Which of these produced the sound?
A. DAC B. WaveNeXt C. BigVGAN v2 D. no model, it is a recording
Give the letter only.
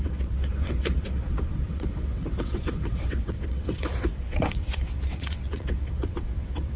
B